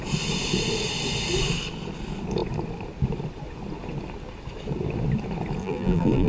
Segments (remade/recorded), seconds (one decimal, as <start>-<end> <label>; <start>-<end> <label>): 0.0-5.6 recorded; 5.6-6.3 remade